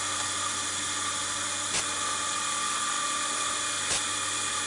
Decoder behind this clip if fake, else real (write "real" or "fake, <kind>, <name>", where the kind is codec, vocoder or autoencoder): real